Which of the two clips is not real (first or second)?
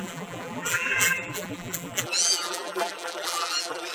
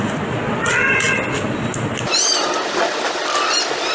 first